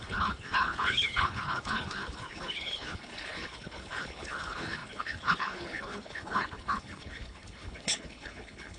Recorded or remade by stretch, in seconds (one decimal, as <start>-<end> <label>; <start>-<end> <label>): 0.0-8.8 remade